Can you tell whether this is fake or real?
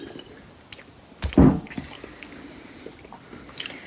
real